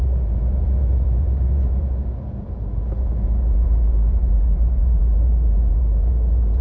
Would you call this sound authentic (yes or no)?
no